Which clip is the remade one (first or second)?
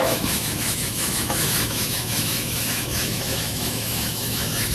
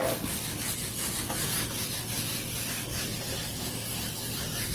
first